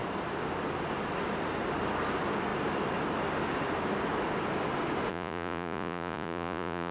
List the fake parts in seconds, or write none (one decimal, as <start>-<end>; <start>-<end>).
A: 5.1-6.9